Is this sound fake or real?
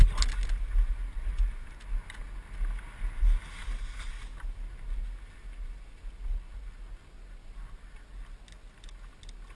real